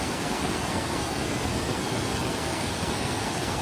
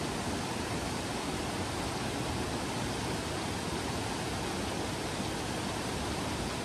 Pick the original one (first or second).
second